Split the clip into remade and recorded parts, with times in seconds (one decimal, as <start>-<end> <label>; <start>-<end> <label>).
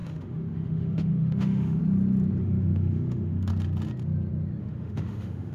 0.0-1.8 remade; 1.8-2.4 recorded; 2.4-3.5 remade; 3.5-4.6 recorded; 4.6-5.5 remade